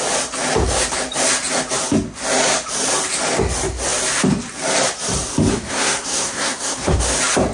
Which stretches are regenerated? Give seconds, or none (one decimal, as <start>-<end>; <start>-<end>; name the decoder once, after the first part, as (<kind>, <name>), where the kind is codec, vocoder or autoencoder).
5.5-7.0 (codec, SNAC)